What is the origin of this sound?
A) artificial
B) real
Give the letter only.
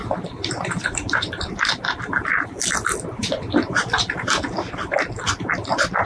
A